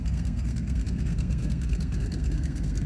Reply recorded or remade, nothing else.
remade